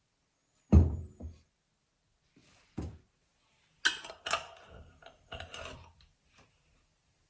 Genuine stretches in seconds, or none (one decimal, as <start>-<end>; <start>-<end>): 0.0-7.3